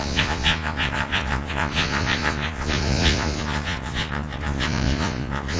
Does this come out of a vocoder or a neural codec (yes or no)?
yes